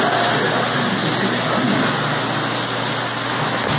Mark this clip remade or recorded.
recorded